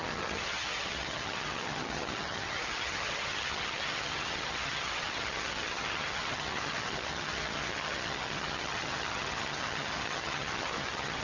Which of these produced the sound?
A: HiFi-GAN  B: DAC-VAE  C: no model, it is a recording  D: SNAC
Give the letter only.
A